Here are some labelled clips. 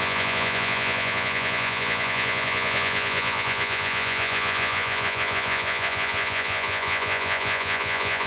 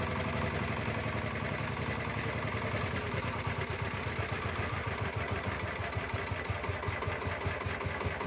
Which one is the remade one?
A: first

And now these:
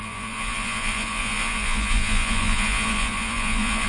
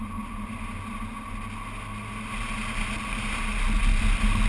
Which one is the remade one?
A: first